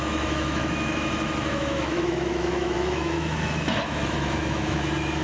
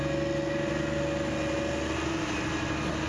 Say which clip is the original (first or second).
second